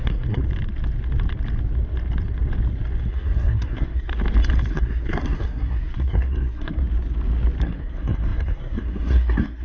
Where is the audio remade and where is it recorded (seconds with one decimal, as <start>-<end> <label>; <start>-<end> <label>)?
0.0-0.4 remade; 0.4-3.1 recorded; 3.1-4.1 remade; 4.1-4.7 recorded; 4.7-6.8 remade; 6.8-7.6 recorded; 7.6-9.6 remade